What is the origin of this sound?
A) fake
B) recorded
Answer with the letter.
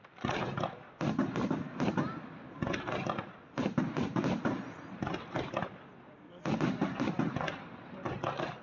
B